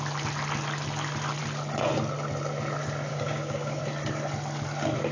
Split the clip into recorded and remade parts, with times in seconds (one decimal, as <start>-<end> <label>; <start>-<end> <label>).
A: 0.0-3.1 recorded; 3.1-3.8 remade; 3.8-5.1 recorded